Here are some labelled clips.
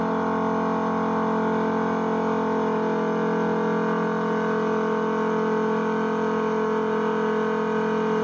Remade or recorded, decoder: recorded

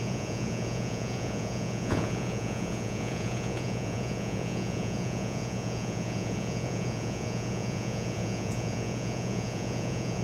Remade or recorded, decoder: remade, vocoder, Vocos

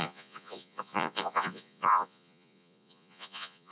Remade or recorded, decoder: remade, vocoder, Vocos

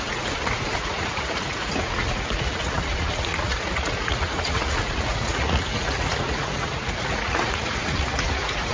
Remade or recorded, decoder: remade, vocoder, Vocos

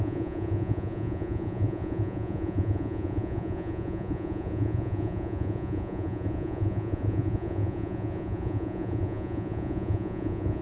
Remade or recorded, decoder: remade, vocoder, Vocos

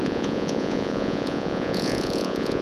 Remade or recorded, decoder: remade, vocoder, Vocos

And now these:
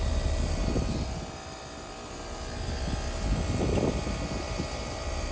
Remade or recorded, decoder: recorded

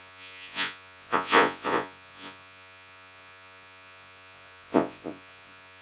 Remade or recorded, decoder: remade, vocoder, Vocos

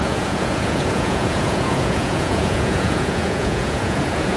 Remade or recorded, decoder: remade, vocoder, Vocos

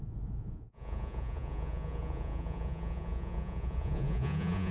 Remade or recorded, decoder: remade, vocoder, Vocos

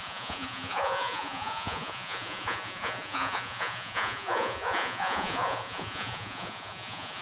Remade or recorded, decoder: remade, vocoder, Vocos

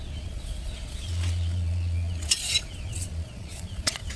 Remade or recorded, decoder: remade, vocoder, Vocos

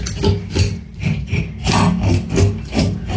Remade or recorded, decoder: recorded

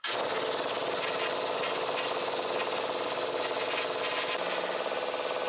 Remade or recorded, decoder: recorded